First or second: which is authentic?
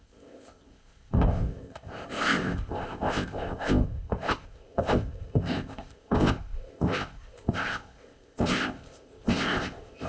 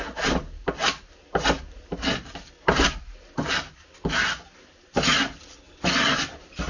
second